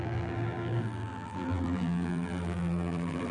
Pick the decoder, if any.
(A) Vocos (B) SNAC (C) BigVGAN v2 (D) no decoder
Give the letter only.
C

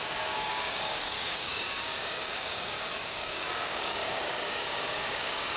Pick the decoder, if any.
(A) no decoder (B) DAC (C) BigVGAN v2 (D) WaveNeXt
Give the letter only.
B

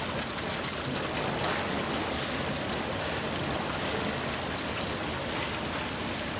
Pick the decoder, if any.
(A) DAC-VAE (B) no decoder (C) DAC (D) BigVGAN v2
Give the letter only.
B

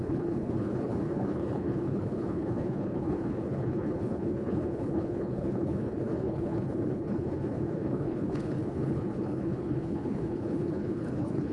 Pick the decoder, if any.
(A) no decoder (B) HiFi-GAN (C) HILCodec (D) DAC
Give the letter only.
C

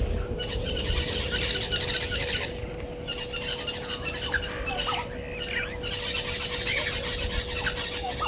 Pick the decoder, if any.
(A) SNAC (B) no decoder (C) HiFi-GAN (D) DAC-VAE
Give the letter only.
B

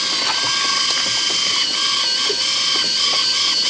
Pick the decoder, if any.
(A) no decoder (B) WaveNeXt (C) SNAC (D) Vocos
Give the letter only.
A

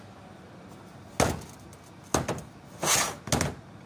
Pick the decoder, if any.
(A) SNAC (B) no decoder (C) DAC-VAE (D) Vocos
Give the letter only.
B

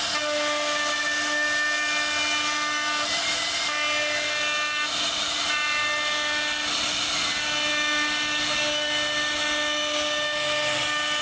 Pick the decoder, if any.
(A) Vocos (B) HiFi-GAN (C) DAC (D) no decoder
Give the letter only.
D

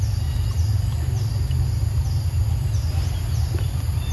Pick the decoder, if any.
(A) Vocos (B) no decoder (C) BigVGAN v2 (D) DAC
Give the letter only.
B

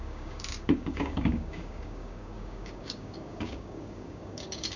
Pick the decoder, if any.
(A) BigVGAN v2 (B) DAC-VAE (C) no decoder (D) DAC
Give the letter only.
D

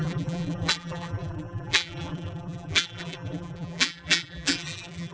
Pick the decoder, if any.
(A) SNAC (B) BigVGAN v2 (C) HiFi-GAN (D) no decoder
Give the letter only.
B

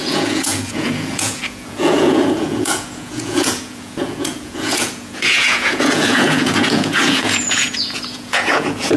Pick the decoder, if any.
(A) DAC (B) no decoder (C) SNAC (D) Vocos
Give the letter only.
D